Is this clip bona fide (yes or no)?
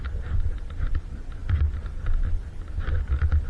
yes